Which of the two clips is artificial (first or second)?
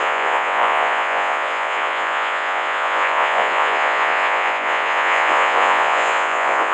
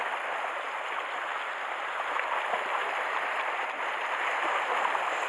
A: first